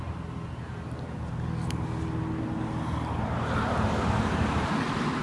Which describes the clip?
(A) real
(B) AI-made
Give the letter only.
A